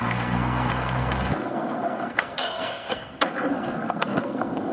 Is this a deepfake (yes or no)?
yes